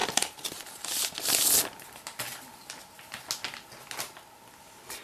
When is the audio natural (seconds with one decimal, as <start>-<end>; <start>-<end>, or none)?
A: 0.0-5.0